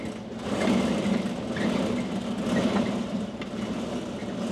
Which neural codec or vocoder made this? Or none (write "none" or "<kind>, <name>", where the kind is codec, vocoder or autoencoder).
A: none